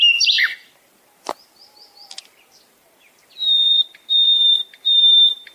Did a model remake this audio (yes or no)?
no